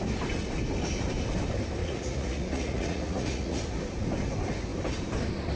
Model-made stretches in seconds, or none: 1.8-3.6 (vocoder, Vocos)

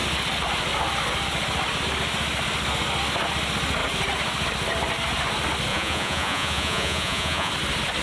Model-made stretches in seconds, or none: 5.7-7.5 (vocoder, Vocos)

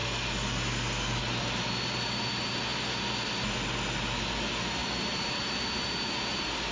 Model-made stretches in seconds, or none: none

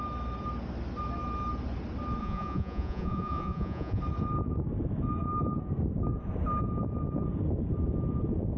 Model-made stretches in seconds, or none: 2.2-4.0 (vocoder, Vocos)

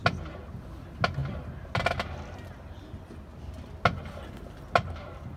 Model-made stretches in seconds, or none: none

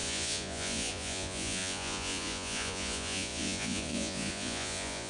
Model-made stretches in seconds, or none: 0.0-5.1 (vocoder, Vocos)